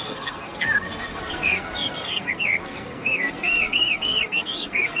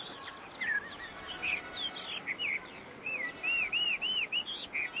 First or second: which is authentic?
second